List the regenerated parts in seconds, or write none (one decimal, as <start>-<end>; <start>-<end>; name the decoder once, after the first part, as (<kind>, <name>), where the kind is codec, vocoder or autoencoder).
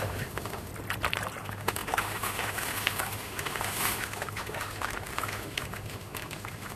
0.0-0.7 (autoencoder, DAC-VAE); 1.4-6.8